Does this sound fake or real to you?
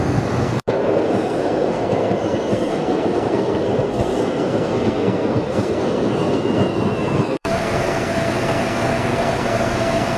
fake